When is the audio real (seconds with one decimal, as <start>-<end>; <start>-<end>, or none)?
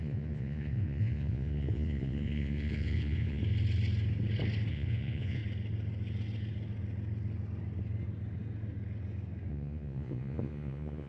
3.4-4.7; 5.4-9.5